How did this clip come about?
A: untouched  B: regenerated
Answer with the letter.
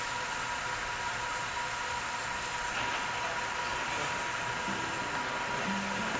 A